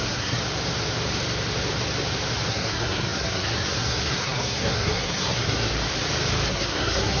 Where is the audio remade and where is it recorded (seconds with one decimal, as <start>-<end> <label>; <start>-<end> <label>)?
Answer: 0.0-0.4 remade; 0.4-2.5 recorded; 2.5-5.7 remade; 5.7-6.5 recorded; 6.5-7.2 remade